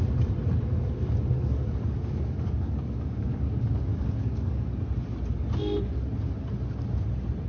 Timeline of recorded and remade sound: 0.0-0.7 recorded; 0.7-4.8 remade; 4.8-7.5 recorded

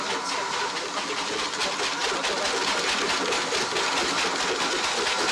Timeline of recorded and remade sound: 0.0-5.3 recorded